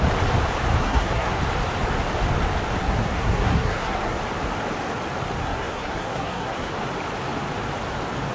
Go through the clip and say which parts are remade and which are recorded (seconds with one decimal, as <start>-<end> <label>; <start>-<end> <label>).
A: 0.0-0.8 recorded; 0.8-1.4 remade; 1.4-2.8 recorded; 2.8-4.2 remade; 4.2-5.4 recorded; 5.4-6.7 remade; 6.7-8.3 recorded